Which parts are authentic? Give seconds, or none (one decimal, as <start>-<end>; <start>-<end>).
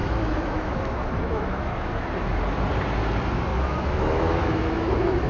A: 2.4-3.5